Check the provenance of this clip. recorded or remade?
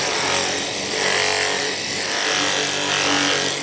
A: recorded